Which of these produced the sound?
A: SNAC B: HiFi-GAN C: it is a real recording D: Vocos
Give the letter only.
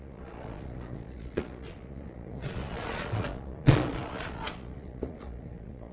D